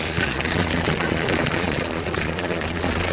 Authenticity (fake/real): fake